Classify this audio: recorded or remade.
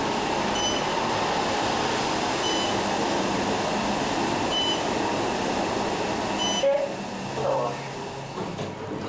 recorded